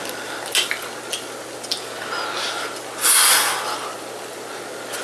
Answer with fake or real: real